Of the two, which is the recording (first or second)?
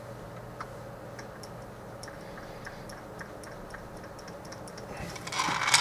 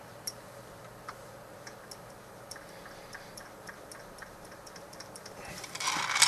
first